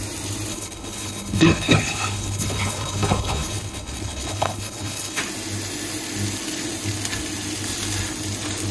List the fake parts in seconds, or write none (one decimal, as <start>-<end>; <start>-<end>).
0.5-5.2